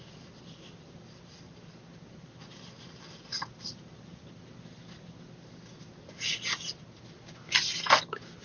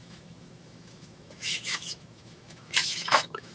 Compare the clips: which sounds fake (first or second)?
second